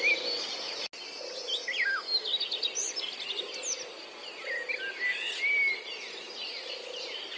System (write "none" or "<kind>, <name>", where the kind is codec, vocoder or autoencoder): none